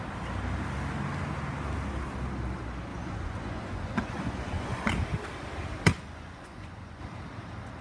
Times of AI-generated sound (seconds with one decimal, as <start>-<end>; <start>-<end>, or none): 2.9-4.9; 5.9-7.0